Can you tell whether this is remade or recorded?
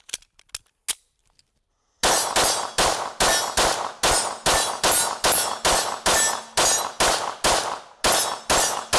recorded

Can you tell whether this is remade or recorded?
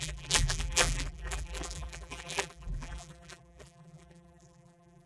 remade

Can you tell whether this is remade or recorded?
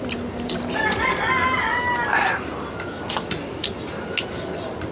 recorded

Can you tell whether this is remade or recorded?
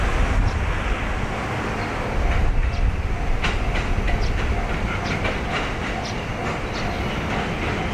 recorded